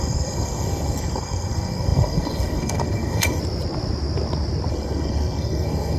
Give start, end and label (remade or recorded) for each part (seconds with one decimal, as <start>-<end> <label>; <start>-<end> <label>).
0.0-3.4 remade; 3.4-4.7 recorded; 4.7-6.0 remade